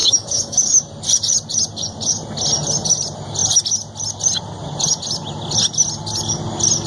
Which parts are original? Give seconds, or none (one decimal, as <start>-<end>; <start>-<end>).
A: 0.8-6.9